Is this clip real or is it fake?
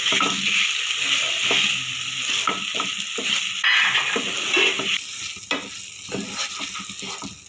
real